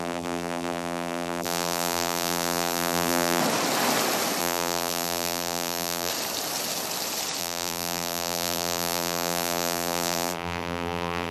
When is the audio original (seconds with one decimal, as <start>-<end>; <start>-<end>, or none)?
3.4-4.4; 6.1-7.4